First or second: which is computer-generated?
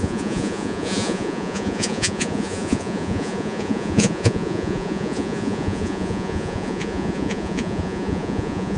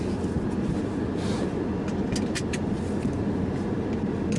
first